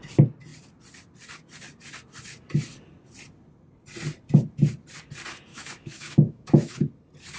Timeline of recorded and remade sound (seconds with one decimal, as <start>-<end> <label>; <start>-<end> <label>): 0.0-5.5 recorded; 5.5-6.9 remade; 6.9-7.4 recorded

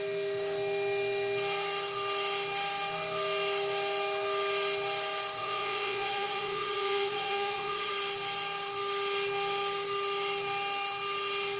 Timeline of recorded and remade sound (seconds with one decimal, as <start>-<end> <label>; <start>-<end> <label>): 0.0-5.4 recorded; 5.4-7.9 remade; 7.9-11.6 recorded

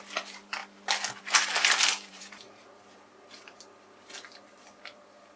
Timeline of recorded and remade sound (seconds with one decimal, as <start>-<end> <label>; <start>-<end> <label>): 0.0-0.6 remade; 0.6-1.2 recorded; 1.2-5.4 remade

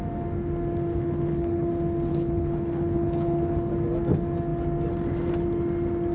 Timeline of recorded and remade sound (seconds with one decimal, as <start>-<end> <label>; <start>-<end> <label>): 0.0-0.9 recorded; 0.9-1.7 remade; 1.7-2.1 recorded; 2.1-3.7 remade; 3.7-6.1 recorded

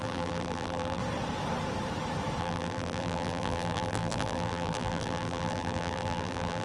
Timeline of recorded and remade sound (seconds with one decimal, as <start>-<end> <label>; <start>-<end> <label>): 0.0-1.0 remade; 1.0-2.4 recorded; 2.4-6.6 remade

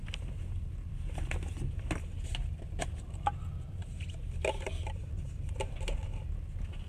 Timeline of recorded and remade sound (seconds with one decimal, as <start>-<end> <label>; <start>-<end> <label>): 0.0-6.9 recorded

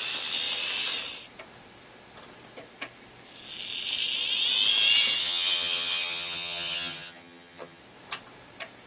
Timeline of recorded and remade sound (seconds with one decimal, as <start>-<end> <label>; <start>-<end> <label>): 0.0-5.2 recorded; 5.2-7.8 remade; 7.8-8.9 recorded